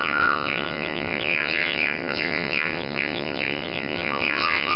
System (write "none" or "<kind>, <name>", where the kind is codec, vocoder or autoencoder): vocoder, WaveNeXt